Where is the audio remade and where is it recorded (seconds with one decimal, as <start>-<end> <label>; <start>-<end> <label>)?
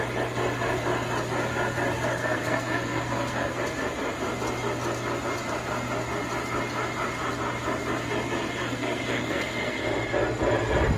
0.0-2.1 recorded; 2.1-3.6 remade; 3.6-8.6 recorded; 8.6-9.8 remade; 9.8-11.0 recorded